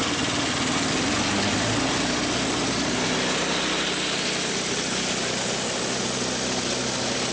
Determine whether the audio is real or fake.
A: real